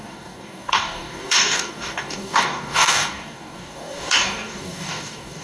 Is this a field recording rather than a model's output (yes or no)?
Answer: no